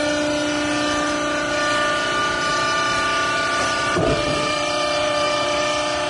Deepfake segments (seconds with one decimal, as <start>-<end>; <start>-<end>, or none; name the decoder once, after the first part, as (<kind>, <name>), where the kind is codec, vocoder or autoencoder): 2.5-5.6 (vocoder, BigVGAN v2)